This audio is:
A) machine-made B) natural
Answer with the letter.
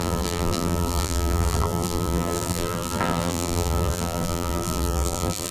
A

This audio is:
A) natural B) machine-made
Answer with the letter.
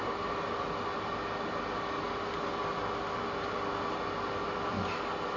A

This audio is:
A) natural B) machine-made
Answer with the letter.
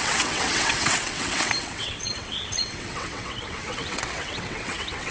B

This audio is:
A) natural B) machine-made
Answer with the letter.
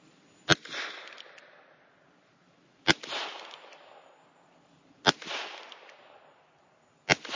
A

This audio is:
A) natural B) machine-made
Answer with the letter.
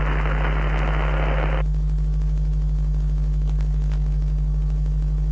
A